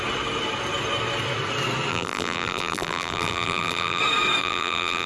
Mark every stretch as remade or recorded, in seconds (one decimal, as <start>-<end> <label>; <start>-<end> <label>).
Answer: 0.0-1.9 recorded; 1.9-4.0 remade; 4.0-4.4 recorded; 4.4-5.1 remade